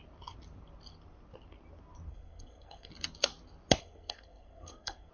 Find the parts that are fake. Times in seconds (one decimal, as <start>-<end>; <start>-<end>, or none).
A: 2.1-2.9; 3.8-5.1